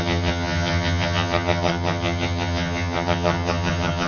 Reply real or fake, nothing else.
fake